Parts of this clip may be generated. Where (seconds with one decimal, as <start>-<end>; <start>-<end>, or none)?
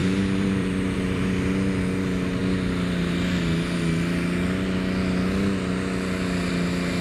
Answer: 0.0-1.3